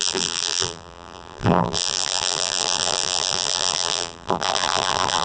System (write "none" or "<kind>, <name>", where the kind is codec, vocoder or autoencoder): vocoder, BigVGAN v2